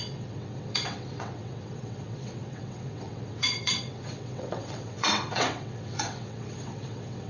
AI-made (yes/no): yes